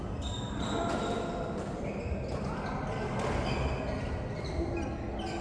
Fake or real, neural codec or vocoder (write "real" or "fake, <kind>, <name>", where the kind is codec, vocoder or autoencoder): real